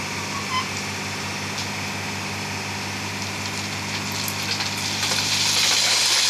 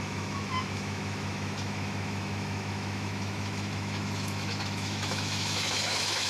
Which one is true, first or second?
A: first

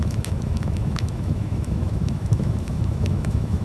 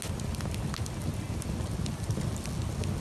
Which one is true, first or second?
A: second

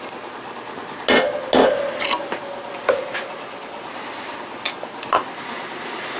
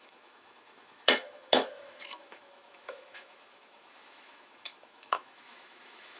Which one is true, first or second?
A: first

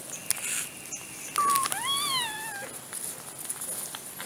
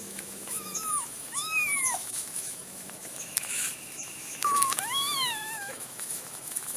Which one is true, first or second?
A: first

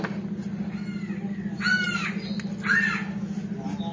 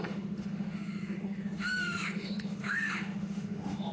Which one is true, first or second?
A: first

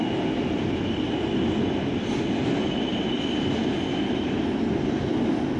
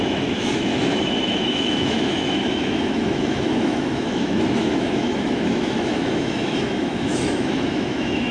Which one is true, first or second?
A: first